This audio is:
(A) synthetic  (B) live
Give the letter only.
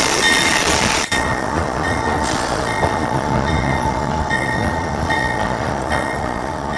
A